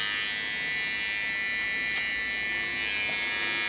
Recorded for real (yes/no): yes